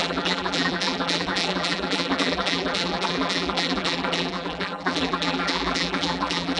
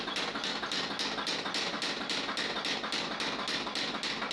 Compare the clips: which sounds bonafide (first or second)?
second